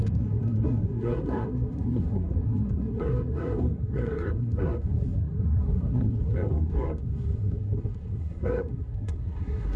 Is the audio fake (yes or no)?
yes